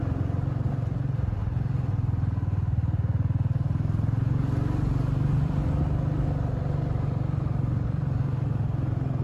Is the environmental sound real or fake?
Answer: real